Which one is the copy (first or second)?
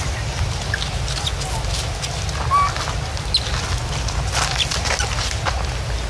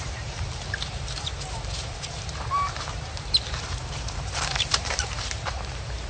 second